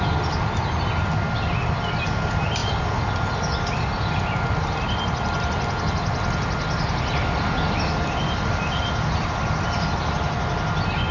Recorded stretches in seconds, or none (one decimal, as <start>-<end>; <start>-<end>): 0.0-11.1